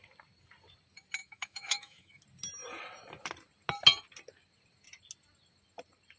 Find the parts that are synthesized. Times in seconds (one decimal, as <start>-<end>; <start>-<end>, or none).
1.2-2.2